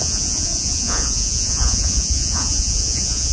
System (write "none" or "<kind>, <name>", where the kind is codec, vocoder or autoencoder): vocoder, Vocos